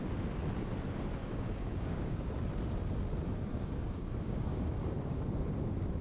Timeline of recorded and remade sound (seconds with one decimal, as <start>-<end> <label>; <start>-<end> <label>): 0.0-1.2 recorded; 1.2-2.3 remade; 2.3-3.5 recorded; 3.5-5.6 remade; 5.6-6.0 recorded